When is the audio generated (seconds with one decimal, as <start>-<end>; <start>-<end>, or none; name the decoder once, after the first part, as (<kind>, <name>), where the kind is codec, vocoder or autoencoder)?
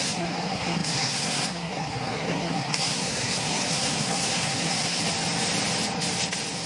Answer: 0.0-5.0 (codec, SNAC)